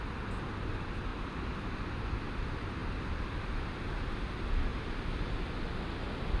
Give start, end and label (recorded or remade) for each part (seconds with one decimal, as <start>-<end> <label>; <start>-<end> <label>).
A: 0.0-1.1 recorded; 1.1-2.2 remade; 2.2-6.4 recorded